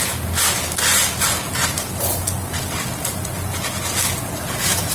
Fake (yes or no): no